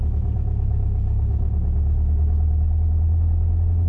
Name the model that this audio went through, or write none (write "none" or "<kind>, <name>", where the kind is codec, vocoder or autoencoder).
none